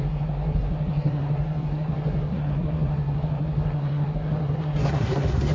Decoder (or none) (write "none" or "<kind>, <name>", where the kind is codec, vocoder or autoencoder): codec, SNAC